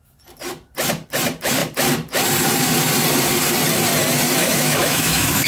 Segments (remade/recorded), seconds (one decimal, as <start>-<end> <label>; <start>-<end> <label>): 0.0-4.4 recorded; 4.4-5.5 remade